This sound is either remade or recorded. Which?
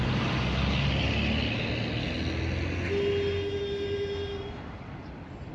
recorded